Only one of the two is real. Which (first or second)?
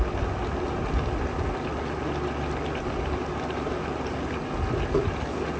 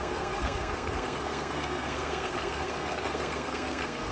first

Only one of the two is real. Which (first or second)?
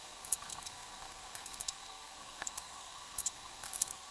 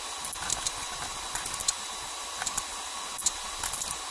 second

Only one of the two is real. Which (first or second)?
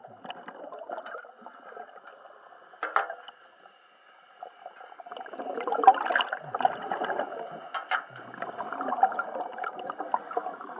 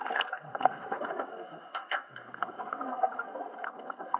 first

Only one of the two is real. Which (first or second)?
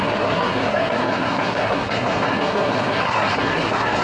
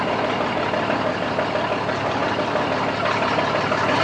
second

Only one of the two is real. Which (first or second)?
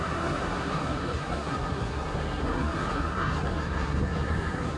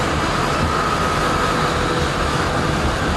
second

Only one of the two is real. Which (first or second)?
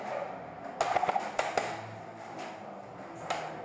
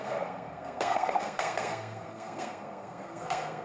first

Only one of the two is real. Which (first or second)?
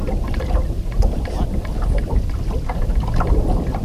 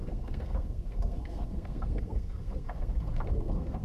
first